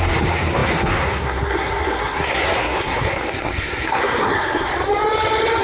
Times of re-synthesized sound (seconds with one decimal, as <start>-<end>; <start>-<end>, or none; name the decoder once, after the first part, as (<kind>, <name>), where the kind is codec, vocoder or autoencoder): 0.0-4.7 (codec, SNAC)